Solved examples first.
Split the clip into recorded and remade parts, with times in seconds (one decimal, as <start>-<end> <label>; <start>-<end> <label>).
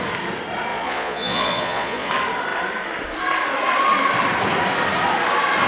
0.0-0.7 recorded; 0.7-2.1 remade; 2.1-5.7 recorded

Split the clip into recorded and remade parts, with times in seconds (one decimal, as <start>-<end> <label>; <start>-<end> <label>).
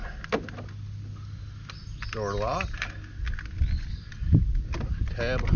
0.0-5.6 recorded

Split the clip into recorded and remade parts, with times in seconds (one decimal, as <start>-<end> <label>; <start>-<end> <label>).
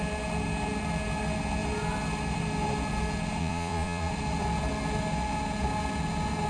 0.0-3.4 recorded; 3.4-4.1 remade; 4.1-6.5 recorded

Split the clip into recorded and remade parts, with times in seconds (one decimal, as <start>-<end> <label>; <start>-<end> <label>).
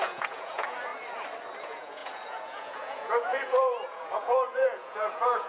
0.0-0.9 remade; 0.9-1.6 recorded; 1.6-5.5 remade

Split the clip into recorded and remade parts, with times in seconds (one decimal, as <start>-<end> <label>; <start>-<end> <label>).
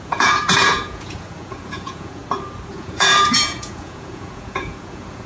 0.0-2.2 remade; 2.2-2.7 recorded; 2.7-5.3 remade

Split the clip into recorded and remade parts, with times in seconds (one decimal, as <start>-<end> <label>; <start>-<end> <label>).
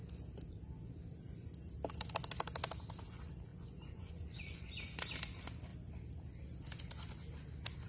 0.0-3.5 recorded; 3.5-4.8 remade; 4.8-7.9 recorded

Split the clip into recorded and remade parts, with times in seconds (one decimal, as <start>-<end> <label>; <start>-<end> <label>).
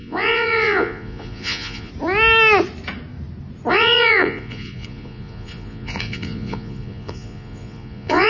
0.0-1.9 remade; 1.9-3.7 recorded; 3.7-8.3 remade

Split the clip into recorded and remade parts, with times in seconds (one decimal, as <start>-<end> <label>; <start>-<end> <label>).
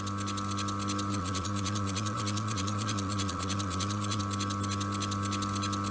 0.0-1.1 recorded; 1.1-4.2 remade; 4.2-5.9 recorded